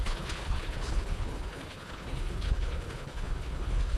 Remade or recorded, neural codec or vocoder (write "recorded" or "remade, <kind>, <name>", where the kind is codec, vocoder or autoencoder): remade, codec, HILCodec